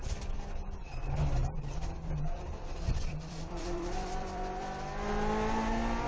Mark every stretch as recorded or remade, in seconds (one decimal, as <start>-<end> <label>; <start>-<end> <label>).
0.0-1.4 recorded; 1.4-5.1 remade; 5.1-6.1 recorded